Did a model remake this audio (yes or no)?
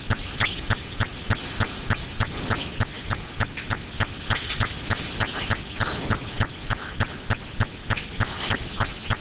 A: no